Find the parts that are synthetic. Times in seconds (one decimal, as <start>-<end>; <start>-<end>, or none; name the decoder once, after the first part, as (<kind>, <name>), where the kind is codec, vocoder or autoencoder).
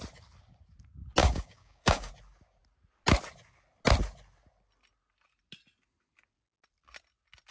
1.2-2.1 (codec, DAC)